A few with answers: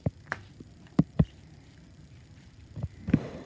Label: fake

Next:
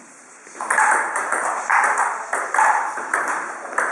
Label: fake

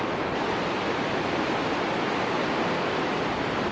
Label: real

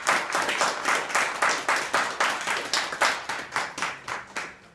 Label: real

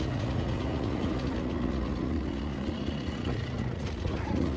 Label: fake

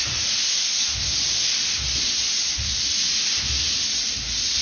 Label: real